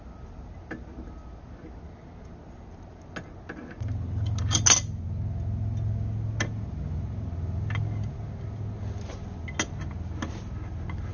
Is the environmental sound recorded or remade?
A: recorded